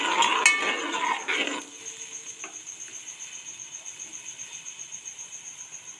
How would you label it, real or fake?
real